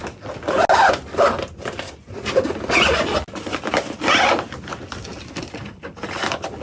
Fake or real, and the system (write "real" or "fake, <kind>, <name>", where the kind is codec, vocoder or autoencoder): real